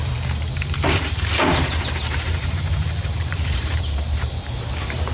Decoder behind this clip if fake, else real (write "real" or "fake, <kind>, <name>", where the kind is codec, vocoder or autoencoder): fake, vocoder, BigVGAN v2